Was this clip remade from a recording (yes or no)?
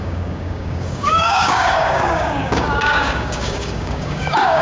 yes